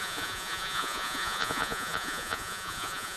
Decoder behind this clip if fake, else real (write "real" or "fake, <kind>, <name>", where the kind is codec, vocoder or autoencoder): fake, vocoder, Vocos